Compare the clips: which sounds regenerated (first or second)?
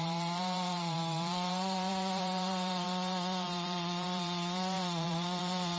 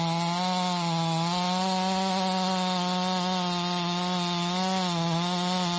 first